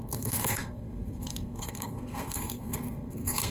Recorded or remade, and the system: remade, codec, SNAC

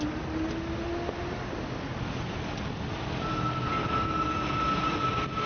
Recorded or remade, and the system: recorded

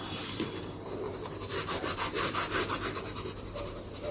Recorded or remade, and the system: recorded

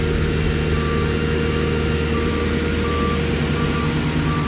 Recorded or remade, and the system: recorded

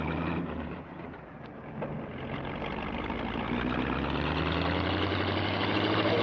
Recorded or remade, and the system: recorded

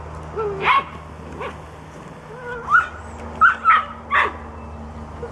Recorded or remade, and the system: recorded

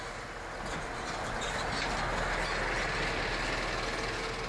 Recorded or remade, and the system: recorded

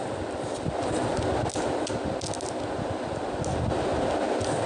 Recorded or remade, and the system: recorded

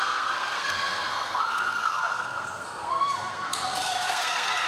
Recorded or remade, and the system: remade, codec, SNAC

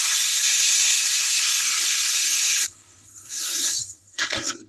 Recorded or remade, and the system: remade, codec, SNAC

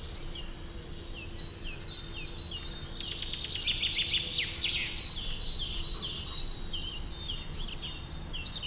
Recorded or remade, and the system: recorded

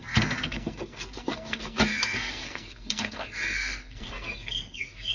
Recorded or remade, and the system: remade, codec, SNAC